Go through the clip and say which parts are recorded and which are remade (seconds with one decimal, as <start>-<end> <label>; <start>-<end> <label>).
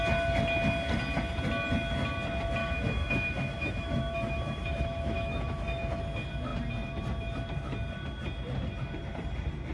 0.0-2.6 recorded; 2.6-6.0 remade; 6.0-9.7 recorded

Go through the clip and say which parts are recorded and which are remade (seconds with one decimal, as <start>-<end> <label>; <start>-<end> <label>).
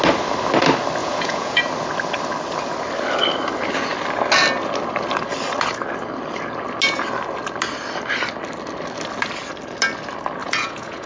0.0-1.0 recorded; 1.0-1.6 remade; 1.6-10.4 recorded; 10.4-11.1 remade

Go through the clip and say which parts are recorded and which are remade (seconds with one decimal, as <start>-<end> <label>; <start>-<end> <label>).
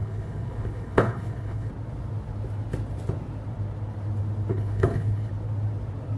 0.0-1.7 remade; 1.7-4.5 recorded; 4.5-5.3 remade; 5.3-6.2 recorded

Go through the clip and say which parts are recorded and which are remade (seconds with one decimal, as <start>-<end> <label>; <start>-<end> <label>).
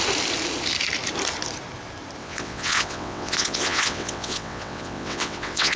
0.0-2.2 recorded; 2.2-5.8 remade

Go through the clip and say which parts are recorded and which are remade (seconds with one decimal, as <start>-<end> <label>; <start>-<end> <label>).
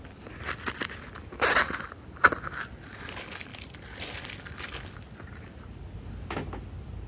0.0-7.1 recorded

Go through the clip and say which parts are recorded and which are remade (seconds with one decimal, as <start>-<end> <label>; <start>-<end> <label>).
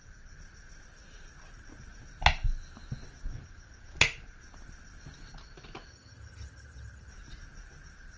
0.0-5.9 recorded; 5.9-7.1 remade; 7.1-8.2 recorded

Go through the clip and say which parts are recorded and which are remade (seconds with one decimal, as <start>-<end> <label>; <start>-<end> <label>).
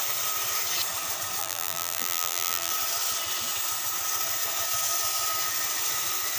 0.0-1.4 recorded; 1.4-2.7 remade; 2.7-6.4 recorded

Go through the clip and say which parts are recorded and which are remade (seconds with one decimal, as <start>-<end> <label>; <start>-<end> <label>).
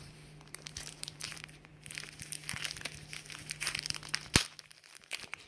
0.0-1.7 remade; 1.7-5.0 recorded; 5.0-5.5 remade